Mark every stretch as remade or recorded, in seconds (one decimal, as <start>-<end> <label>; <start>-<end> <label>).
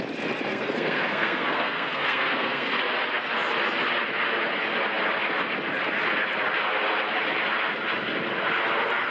0.0-0.5 recorded; 0.5-2.8 remade; 2.8-9.1 recorded